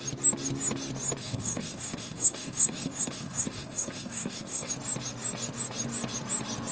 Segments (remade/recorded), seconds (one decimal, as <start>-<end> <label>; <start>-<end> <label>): 0.0-1.2 recorded; 1.2-4.7 remade; 4.7-6.7 recorded